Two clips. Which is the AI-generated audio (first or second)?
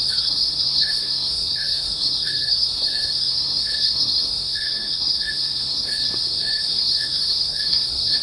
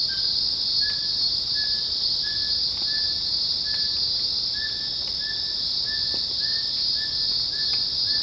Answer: first